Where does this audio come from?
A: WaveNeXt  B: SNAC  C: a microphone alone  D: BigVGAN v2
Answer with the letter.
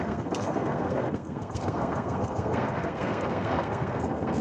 B